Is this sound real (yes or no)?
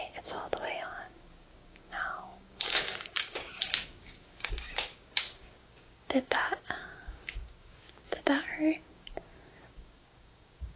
no